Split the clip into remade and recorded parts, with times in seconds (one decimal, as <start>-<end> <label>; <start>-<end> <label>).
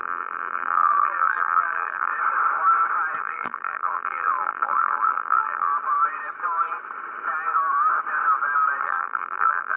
0.0-2.1 remade; 2.1-3.2 recorded; 3.2-5.7 remade; 5.7-8.8 recorded; 8.8-9.8 remade